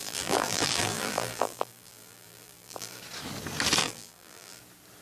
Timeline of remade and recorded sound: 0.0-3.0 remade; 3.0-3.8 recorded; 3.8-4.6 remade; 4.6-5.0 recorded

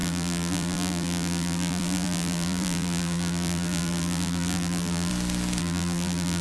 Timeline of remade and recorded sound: 0.0-5.1 remade; 5.1-5.6 recorded; 5.6-6.4 remade

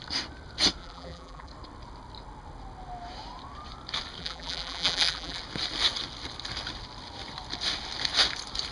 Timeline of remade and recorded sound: 0.0-0.8 recorded; 0.8-1.5 remade; 1.5-4.2 recorded; 4.2-5.4 remade; 5.4-8.7 recorded